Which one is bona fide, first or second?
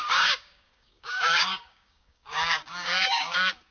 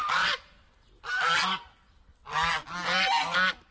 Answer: second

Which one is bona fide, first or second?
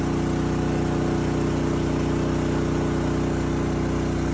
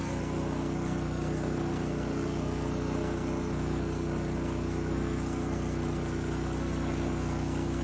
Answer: first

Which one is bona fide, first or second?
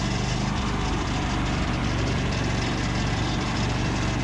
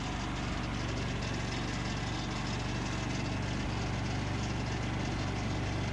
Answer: second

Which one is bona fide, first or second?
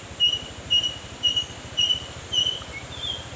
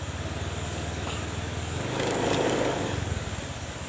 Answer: first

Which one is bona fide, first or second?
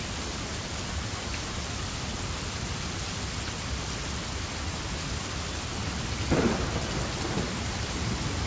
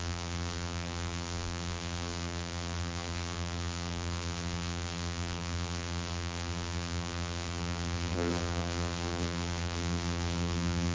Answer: first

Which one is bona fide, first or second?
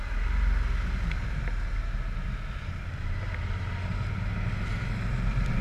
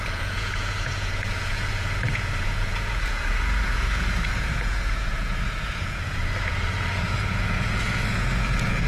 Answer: first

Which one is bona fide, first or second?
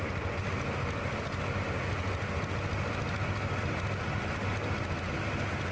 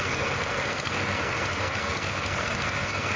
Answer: first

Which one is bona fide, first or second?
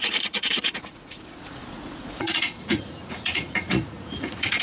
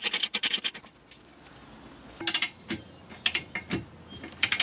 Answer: second